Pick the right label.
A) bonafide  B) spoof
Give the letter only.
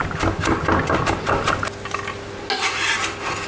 A